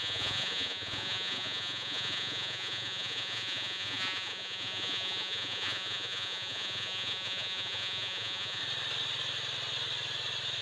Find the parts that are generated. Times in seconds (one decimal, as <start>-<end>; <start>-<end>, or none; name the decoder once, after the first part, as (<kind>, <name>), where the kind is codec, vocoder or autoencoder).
0.0-8.6 (vocoder, Vocos)